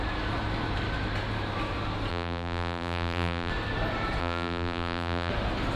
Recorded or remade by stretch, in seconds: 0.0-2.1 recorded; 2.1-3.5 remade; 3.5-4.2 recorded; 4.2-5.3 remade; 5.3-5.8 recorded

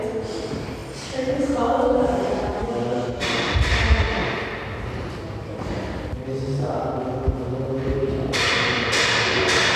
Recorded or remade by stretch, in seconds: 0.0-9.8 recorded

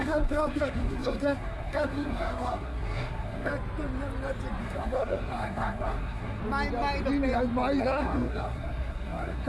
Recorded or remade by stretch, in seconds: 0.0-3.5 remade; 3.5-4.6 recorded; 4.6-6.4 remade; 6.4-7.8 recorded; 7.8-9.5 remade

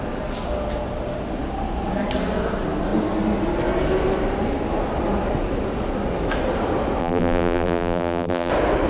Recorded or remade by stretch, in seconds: 0.0-7.0 recorded; 7.0-8.5 remade; 8.5-8.9 recorded

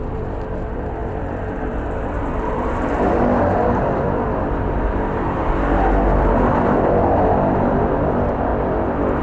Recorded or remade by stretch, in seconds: 0.0-5.4 remade; 5.4-6.2 recorded; 6.2-8.5 remade; 8.5-9.2 recorded